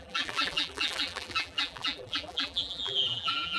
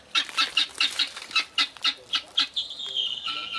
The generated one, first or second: first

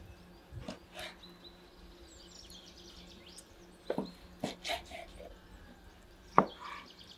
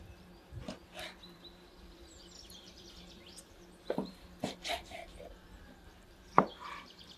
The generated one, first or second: second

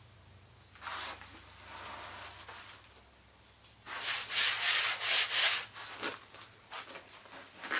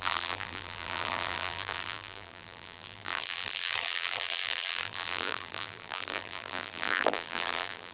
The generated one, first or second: second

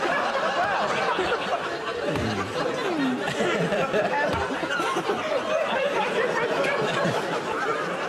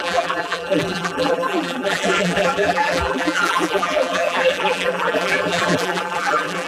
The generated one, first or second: second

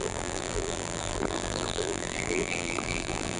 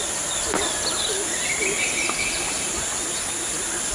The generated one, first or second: first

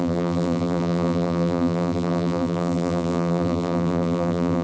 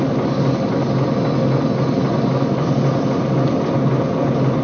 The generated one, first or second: first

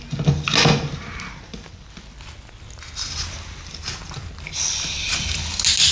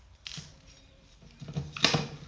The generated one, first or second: second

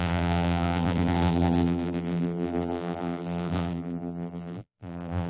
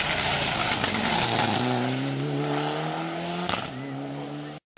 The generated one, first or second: first